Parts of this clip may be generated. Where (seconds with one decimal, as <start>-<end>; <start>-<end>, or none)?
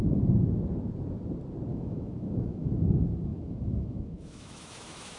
1.7-2.7; 3.3-5.2